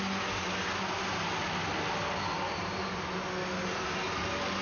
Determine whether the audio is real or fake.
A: real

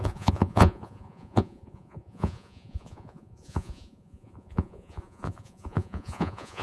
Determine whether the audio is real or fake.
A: fake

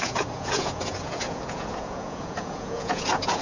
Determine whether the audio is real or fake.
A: fake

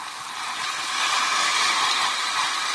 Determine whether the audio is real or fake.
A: real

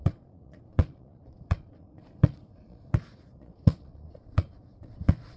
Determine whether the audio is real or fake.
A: fake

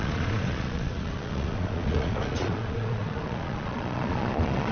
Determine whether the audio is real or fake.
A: fake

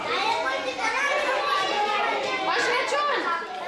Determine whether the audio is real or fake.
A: real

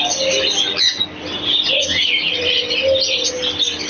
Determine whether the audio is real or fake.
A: real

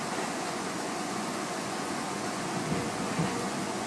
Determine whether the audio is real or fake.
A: fake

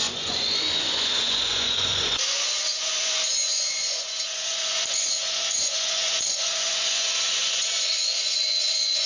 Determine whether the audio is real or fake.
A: fake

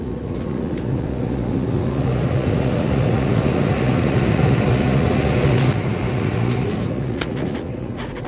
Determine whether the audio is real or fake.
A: fake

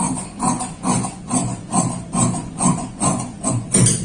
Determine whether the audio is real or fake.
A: fake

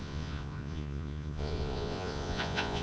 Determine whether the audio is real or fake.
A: fake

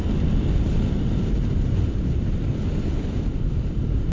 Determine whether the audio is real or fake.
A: real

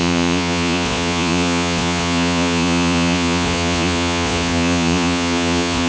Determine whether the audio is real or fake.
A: fake